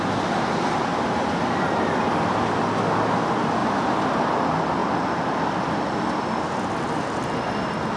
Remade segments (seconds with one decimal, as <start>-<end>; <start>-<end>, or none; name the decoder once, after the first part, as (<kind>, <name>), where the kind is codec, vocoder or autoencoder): none